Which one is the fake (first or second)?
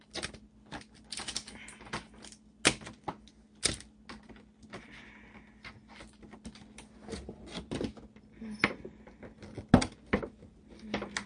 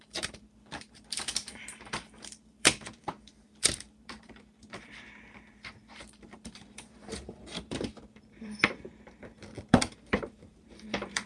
second